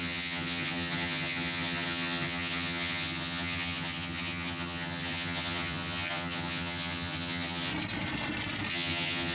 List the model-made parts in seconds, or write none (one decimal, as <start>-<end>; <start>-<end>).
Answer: 0.0-7.7; 8.7-9.3